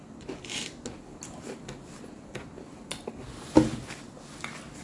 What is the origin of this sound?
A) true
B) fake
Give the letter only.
A